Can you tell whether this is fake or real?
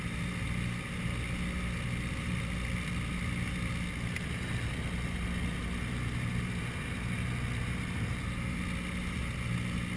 real